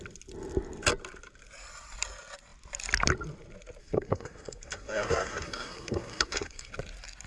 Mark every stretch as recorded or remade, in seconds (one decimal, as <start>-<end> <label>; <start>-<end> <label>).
0.0-3.8 recorded; 3.8-6.7 remade; 6.7-7.3 recorded